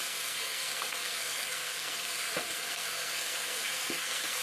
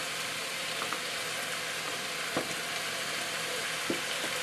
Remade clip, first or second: first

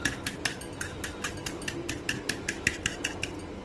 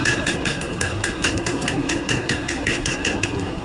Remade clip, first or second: second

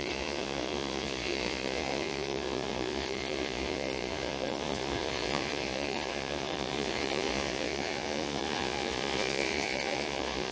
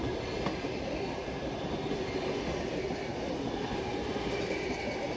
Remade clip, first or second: first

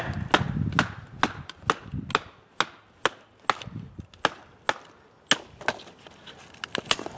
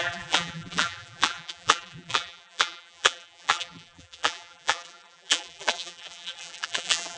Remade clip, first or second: second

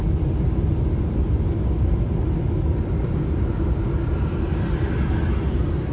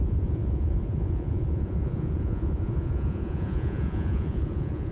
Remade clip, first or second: second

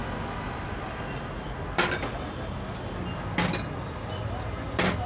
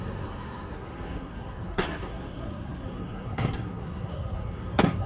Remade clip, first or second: second